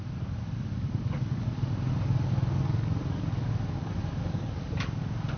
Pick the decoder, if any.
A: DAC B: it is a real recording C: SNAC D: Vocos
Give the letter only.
A